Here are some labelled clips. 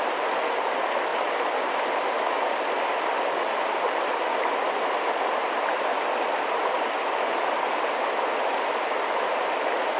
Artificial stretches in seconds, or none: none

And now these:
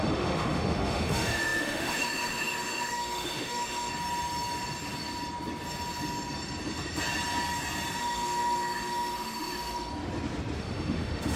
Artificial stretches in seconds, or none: 0.0-3.9 (autoencoder, DAC-VAE); 8.0-9.9; 10.6-11.4

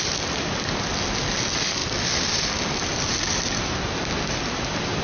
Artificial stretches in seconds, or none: none

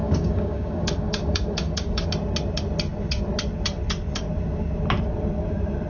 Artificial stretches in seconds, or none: 0.0-2.1 (codec, DAC)

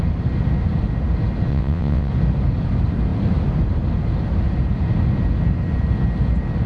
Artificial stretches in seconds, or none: 1.5-2.1 (vocoder, WaveNeXt)